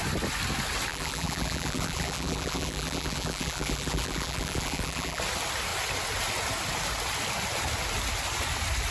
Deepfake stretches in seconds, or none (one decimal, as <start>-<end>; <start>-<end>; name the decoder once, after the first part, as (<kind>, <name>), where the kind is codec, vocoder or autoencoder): 0.9-5.2 (vocoder, BigVGAN v2)